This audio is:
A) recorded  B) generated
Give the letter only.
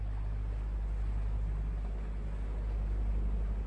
A